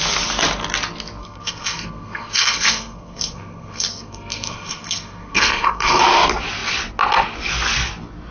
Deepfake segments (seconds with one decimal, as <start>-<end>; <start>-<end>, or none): 1.2-6.0